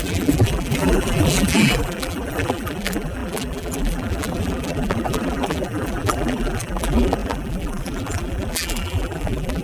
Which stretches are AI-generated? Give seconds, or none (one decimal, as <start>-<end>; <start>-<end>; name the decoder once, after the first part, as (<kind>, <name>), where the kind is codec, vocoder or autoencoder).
0.0-9.6 (vocoder, BigVGAN v2)